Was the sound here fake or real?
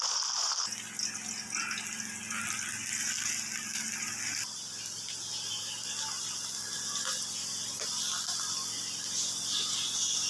real